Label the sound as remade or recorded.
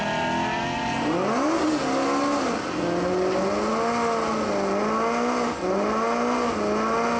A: recorded